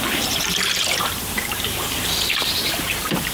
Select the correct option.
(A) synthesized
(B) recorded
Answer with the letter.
A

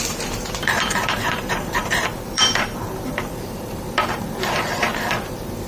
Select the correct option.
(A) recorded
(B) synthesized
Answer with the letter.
B